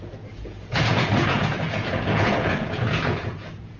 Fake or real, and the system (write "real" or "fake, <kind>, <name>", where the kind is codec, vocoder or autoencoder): fake, vocoder, Vocos